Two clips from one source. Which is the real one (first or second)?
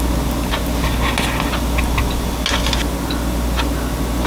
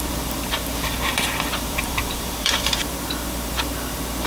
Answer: first